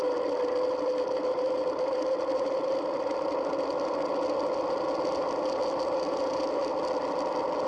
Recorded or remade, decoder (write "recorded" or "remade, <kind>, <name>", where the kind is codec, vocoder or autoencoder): recorded